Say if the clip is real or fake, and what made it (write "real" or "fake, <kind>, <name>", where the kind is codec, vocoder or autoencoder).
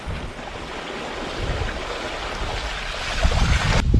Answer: real